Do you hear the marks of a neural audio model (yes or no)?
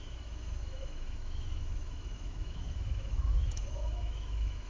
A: yes